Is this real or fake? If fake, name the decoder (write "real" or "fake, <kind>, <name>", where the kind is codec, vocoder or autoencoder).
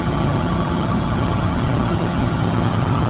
fake, vocoder, HiFi-GAN